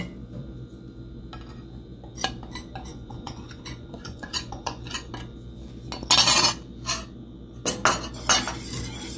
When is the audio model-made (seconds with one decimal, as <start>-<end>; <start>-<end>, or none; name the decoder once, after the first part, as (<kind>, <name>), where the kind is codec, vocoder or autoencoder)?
2.9-5.1 (vocoder, Vocos)